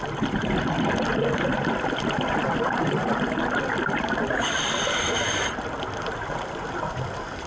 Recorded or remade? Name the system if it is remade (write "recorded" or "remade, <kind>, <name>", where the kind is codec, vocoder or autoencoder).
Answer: remade, vocoder, BigVGAN v2